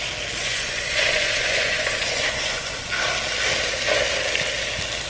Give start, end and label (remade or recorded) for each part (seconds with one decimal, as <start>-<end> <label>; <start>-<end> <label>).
0.0-0.4 recorded; 0.4-2.9 remade; 2.9-5.1 recorded